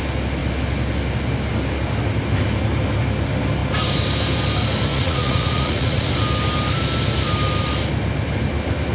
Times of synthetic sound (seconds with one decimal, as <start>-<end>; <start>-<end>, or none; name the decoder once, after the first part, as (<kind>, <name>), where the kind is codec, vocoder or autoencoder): 4.9-6.1 (vocoder, Vocos)